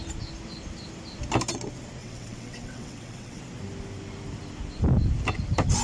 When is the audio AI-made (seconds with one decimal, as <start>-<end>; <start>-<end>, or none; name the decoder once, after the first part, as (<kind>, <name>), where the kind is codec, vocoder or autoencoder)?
2.0-3.4 (vocoder, WaveNeXt)